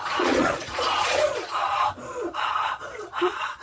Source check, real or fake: fake